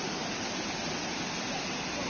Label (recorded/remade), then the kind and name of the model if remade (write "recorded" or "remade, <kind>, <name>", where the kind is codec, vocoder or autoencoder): recorded